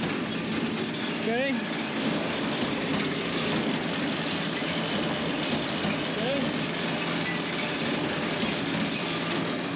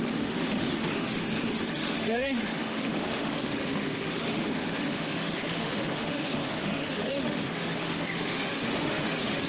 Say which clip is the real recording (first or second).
first